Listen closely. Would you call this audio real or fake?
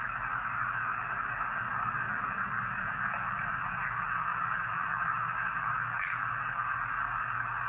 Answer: real